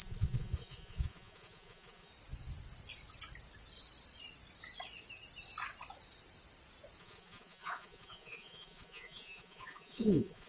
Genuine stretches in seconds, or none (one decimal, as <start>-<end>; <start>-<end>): 2.1-7.0